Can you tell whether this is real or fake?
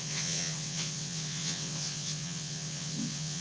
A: fake